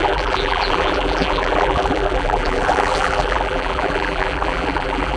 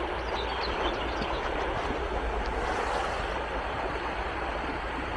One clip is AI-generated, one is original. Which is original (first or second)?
second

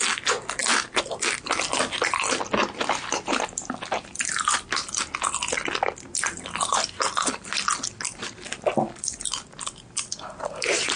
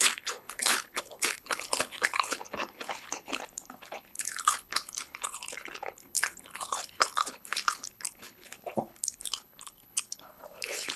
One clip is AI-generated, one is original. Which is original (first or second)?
first